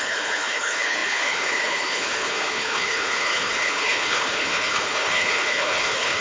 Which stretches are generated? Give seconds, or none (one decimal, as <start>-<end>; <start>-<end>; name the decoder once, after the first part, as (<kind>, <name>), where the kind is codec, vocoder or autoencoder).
0.0-6.2 (codec, HILCodec)